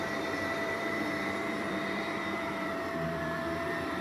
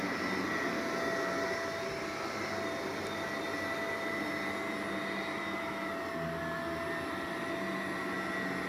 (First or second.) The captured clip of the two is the second